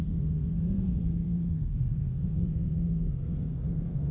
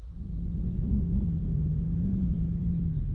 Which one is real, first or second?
second